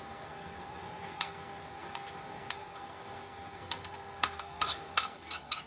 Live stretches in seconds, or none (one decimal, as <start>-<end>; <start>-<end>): none